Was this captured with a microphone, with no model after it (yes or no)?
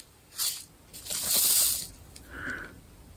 yes